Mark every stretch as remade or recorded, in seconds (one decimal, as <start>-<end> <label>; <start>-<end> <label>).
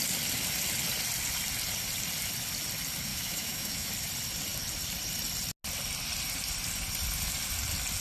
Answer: 0.0-3.1 recorded; 3.1-3.9 remade; 3.9-8.0 recorded